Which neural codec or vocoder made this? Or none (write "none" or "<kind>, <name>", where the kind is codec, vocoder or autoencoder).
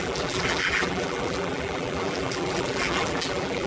vocoder, BigVGAN v2